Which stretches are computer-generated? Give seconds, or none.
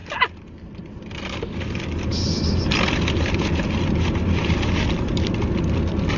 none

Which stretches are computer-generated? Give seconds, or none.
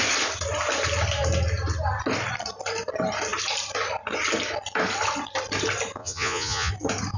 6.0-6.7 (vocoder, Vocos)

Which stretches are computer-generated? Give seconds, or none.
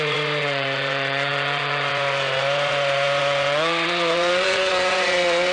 0.0-5.5 (vocoder, Vocos)